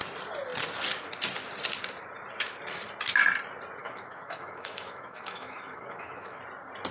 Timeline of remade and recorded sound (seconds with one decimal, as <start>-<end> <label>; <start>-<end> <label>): 0.0-3.8 recorded; 3.8-6.4 remade; 6.4-6.9 recorded